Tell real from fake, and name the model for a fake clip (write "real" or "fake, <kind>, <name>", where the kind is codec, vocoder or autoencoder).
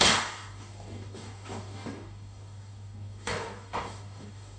fake, codec, DAC